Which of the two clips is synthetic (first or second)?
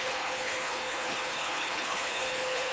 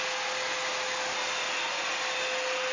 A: first